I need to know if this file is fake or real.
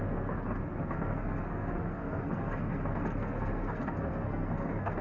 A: fake